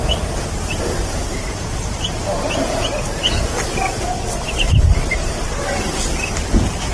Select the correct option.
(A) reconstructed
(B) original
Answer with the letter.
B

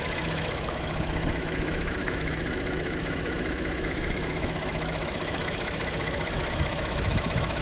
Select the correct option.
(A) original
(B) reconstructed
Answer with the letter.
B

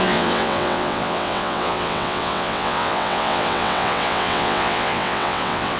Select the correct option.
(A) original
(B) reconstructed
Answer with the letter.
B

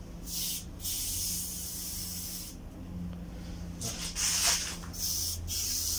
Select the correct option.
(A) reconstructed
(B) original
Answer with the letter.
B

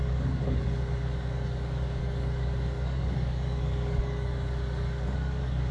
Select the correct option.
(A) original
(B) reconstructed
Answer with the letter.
B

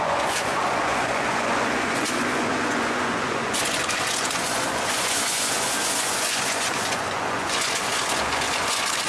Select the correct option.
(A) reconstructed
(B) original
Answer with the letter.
A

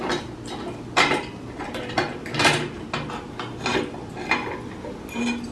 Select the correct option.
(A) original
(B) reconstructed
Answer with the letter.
A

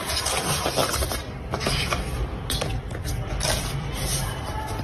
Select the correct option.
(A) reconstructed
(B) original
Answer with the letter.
A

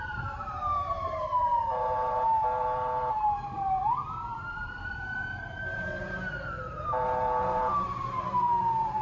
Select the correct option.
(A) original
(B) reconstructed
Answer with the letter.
B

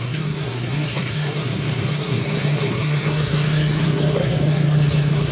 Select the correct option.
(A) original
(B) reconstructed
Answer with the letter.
B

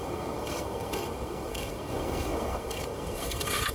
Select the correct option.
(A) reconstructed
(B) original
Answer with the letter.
A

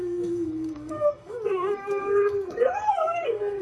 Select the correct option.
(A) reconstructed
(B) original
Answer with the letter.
A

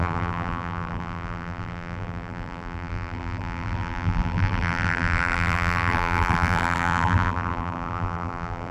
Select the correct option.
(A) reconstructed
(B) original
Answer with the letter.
A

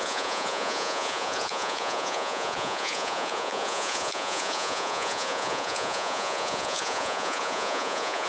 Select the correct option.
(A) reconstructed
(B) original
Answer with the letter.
A